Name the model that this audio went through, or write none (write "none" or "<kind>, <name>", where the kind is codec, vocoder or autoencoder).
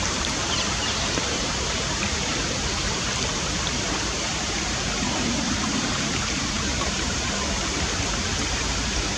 vocoder, BigVGAN v2